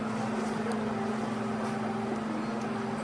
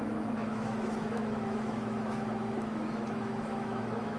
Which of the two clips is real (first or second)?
first